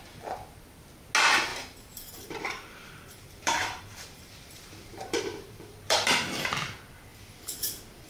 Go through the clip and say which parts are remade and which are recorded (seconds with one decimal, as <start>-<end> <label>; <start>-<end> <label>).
0.0-1.5 recorded; 1.5-6.4 remade; 6.4-8.1 recorded